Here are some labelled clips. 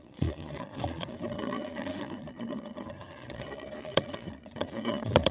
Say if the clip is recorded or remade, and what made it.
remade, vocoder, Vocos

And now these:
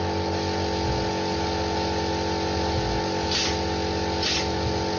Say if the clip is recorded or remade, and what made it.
recorded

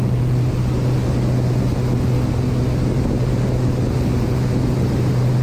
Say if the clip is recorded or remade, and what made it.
recorded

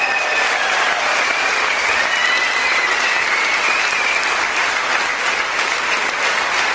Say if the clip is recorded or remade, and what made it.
recorded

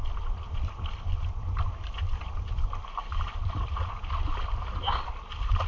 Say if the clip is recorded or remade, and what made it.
remade, vocoder, BigVGAN v2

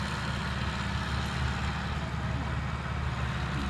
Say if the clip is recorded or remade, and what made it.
recorded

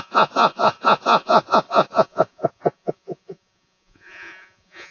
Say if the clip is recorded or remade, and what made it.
remade, vocoder, Vocos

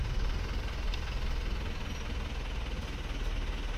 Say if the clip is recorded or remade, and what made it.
recorded